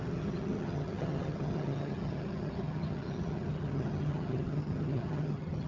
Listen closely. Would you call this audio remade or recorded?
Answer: remade